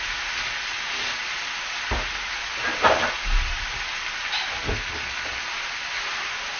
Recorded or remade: recorded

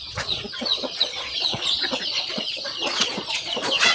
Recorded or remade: remade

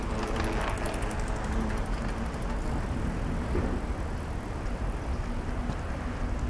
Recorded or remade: recorded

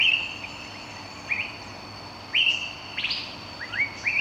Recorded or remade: recorded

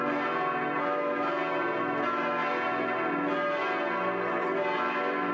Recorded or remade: recorded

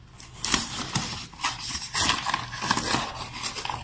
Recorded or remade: recorded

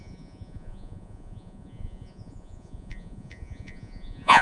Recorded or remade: remade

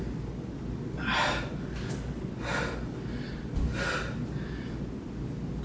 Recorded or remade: recorded